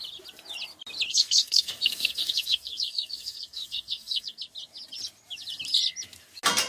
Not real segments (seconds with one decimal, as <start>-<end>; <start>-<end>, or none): 1.1-4.4